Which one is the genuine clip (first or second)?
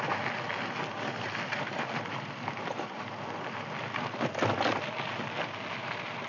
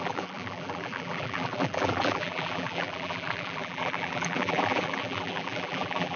first